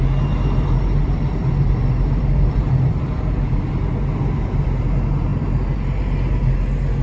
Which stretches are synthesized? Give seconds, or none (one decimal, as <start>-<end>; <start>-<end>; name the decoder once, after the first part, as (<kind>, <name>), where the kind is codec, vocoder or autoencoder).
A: 1.0-1.5 (vocoder, BigVGAN v2); 2.2-3.6